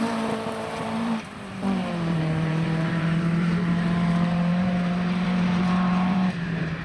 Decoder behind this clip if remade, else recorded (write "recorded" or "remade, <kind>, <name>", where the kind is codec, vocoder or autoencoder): remade, vocoder, BigVGAN v2